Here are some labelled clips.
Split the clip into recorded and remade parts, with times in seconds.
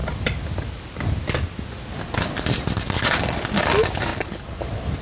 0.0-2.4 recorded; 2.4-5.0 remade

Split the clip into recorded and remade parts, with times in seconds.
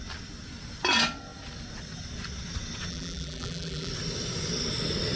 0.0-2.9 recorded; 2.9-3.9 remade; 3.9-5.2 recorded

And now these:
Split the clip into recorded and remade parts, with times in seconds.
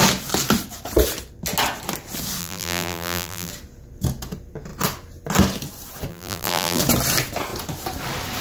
0.0-2.4 recorded; 2.4-3.5 remade; 3.5-6.1 recorded; 6.1-6.8 remade; 6.8-8.4 recorded